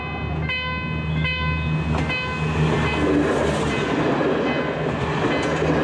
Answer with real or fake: real